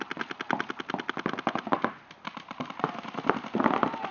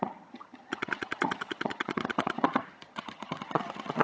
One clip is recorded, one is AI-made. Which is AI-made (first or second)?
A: second